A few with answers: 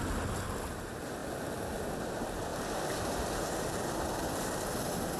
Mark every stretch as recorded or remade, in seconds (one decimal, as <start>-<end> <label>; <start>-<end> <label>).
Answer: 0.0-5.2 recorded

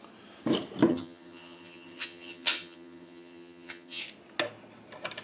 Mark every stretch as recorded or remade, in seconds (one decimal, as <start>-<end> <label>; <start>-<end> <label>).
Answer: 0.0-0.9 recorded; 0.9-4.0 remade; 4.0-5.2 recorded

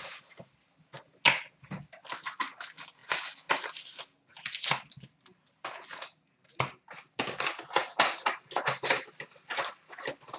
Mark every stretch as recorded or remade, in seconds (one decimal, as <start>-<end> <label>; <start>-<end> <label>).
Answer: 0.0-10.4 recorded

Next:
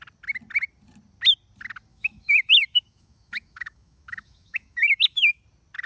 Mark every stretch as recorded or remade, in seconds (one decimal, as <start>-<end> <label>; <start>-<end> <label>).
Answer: 0.0-1.9 recorded; 1.9-5.4 remade; 5.4-5.9 recorded

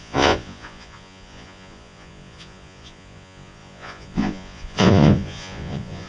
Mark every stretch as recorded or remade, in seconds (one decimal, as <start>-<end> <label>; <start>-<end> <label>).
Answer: 0.0-6.1 remade